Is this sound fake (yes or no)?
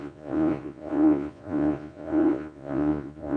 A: yes